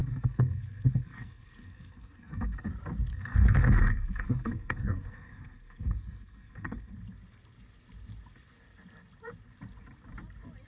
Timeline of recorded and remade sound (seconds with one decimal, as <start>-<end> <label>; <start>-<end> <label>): 0.0-2.7 remade; 2.7-3.1 recorded; 3.1-6.9 remade; 6.9-10.7 recorded